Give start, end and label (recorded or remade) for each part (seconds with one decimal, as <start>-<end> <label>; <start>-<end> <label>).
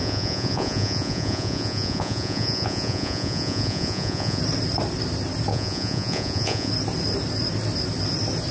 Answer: 0.0-4.4 remade; 4.4-5.5 recorded; 5.5-6.7 remade; 6.7-8.5 recorded